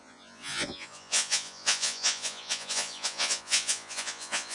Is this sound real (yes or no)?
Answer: no